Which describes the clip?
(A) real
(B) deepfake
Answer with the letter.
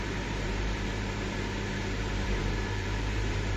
B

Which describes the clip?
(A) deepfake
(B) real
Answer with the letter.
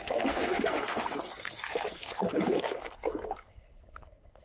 A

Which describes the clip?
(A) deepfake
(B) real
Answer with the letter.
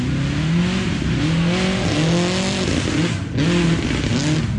B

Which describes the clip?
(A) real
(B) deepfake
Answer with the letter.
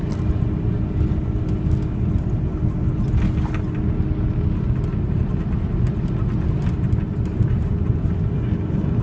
A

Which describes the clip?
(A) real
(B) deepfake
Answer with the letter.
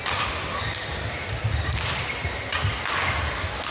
A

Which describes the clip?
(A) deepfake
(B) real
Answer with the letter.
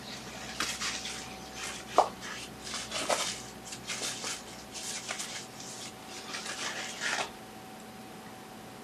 B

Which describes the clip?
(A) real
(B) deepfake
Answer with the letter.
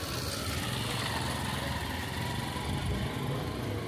A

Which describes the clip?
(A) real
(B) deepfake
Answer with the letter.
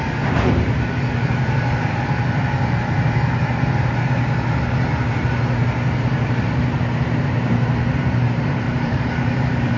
B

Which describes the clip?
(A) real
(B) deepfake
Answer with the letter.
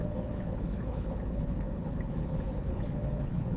B